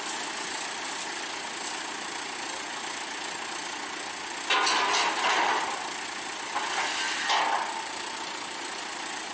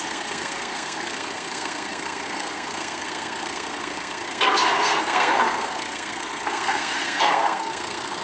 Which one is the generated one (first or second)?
second